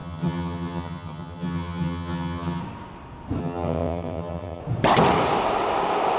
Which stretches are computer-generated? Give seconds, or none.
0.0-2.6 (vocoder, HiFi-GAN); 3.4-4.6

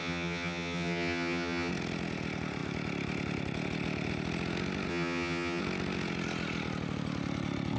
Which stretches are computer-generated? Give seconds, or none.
0.0-1.7 (vocoder, HiFi-GAN); 4.9-5.6

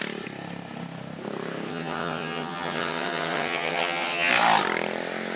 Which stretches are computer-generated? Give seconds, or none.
1.7-4.3 (vocoder, HiFi-GAN)